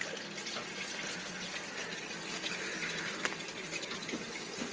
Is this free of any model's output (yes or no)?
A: yes